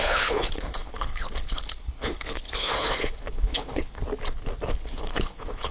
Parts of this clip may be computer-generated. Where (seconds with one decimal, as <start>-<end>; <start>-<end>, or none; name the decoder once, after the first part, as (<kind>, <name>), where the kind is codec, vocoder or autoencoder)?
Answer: 0.0-4.0 (codec, HILCodec); 4.7-5.7